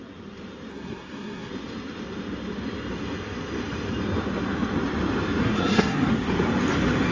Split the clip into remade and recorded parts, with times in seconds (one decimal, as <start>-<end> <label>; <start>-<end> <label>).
0.0-0.7 recorded; 0.7-1.5 remade; 1.5-5.4 recorded; 5.4-6.1 remade; 6.1-7.1 recorded

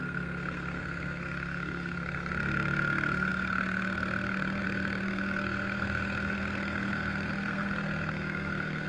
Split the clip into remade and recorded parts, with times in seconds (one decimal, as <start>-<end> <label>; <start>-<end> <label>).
0.0-8.9 remade

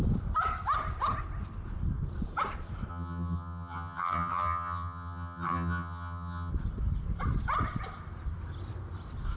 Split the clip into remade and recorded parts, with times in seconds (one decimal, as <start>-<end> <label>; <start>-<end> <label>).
0.0-2.9 recorded; 2.9-6.5 remade; 6.5-9.4 recorded

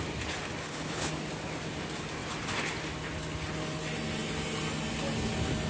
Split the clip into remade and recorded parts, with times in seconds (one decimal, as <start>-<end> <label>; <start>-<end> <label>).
0.0-0.6 recorded; 0.6-1.1 remade; 1.1-5.7 recorded

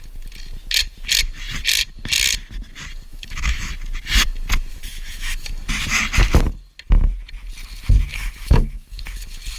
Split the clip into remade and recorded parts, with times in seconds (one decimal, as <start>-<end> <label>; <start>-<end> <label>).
0.0-3.1 recorded; 3.1-3.7 remade; 3.7-4.7 recorded; 4.7-5.5 remade; 5.5-8.1 recorded; 8.1-9.0 remade; 9.0-9.6 recorded

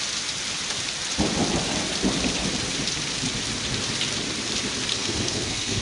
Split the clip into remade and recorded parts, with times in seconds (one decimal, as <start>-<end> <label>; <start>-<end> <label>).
0.0-4.9 recorded; 4.9-5.8 remade